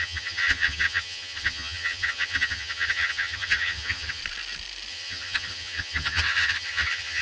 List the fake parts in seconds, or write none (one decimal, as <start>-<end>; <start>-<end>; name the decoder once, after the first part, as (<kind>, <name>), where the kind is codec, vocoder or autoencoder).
0.0-4.2 (vocoder, HiFi-GAN); 4.9-7.2